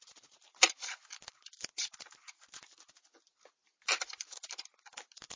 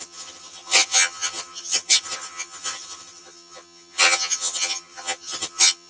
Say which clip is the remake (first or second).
second